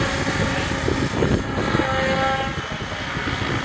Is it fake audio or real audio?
real